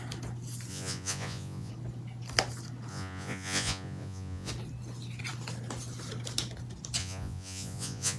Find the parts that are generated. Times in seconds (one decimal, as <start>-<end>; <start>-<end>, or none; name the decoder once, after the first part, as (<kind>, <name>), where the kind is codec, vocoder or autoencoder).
0.7-1.7 (vocoder, Vocos); 2.9-4.5; 7.0-8.2